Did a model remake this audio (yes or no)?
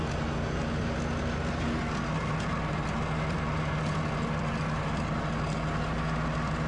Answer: no